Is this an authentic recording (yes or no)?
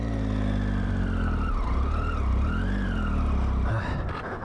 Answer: yes